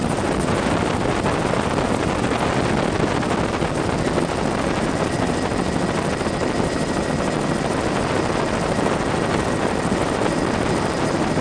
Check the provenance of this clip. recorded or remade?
recorded